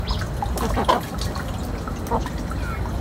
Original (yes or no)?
yes